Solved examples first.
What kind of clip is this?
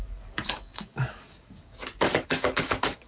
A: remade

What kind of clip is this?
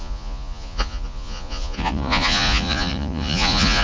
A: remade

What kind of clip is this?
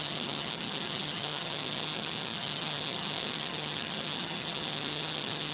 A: remade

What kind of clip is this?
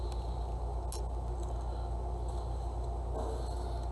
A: recorded